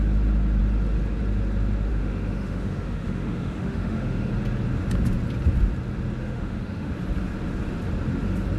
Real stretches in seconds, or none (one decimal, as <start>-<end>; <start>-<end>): 0.0-1.9; 4.3-6.2; 6.9-8.6